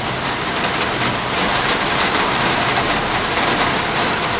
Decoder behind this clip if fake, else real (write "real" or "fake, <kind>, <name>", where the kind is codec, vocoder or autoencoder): real